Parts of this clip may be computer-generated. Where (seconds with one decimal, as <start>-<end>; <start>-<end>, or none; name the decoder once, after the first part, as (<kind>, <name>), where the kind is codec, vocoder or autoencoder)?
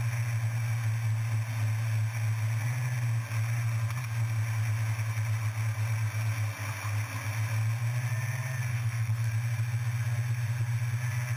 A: 8.7-9.3 (codec, SNAC)